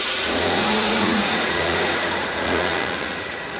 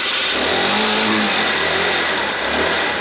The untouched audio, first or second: second